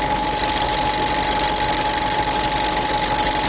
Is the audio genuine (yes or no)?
yes